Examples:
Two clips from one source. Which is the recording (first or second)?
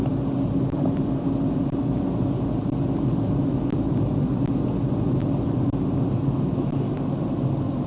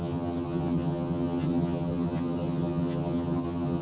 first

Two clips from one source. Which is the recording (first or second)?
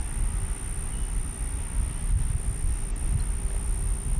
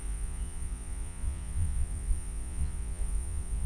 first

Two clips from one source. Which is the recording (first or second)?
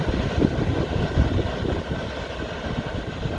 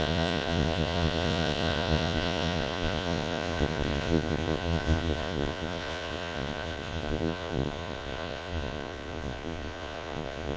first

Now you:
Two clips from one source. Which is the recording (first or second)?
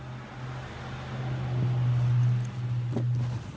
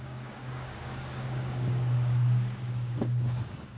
first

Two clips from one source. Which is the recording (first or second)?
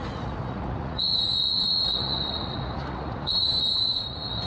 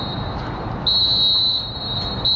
second